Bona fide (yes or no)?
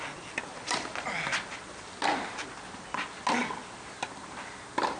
yes